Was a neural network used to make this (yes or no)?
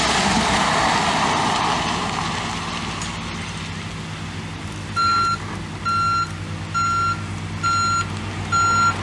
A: no